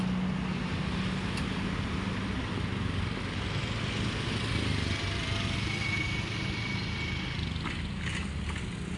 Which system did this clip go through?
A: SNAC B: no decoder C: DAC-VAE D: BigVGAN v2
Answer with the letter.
B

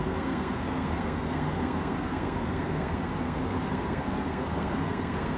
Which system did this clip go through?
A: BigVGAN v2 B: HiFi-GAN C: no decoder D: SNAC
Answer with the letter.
D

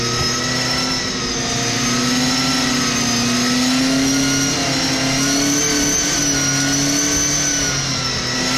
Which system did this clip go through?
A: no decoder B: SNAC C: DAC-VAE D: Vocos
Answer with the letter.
A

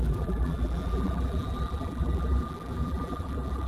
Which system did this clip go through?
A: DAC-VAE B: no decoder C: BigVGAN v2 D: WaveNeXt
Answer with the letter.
C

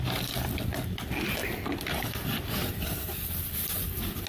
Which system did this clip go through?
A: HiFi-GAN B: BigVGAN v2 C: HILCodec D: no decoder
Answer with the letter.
D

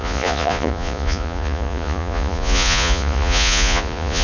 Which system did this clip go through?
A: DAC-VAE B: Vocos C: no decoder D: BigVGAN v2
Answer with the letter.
B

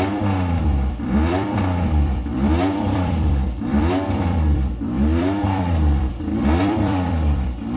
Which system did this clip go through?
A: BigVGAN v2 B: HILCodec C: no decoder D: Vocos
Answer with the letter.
A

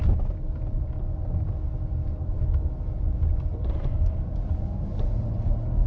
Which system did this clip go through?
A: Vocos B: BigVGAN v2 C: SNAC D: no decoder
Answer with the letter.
D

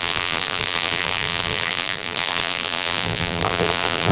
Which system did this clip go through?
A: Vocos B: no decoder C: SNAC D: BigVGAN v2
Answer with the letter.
D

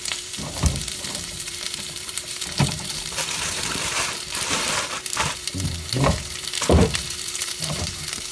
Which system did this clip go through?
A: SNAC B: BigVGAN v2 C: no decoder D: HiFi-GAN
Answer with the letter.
B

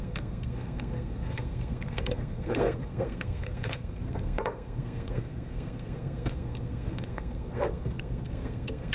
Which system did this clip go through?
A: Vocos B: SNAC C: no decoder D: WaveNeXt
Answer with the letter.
B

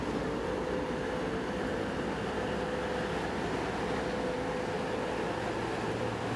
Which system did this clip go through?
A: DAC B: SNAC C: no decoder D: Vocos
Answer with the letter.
C